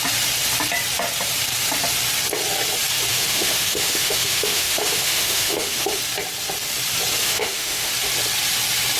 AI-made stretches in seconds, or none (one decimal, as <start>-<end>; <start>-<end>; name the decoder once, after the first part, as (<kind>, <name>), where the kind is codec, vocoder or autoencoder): 3.1-6.0 (autoencoder, DAC-VAE); 7.2-7.9